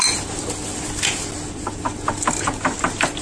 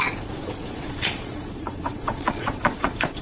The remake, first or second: second